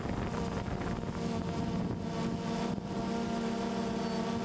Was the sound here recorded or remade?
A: recorded